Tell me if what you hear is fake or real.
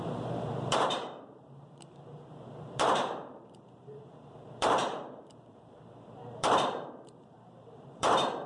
fake